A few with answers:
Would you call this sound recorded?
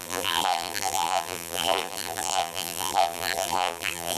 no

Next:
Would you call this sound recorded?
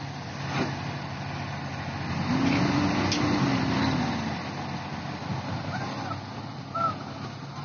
yes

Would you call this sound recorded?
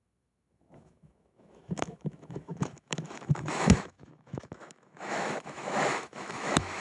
no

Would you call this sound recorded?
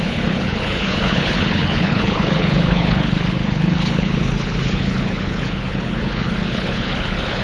no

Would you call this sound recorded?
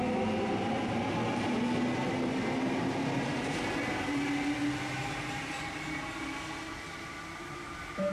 yes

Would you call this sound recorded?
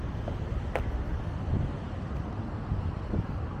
yes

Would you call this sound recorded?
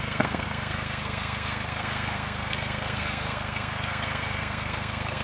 no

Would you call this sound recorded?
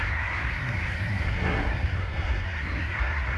no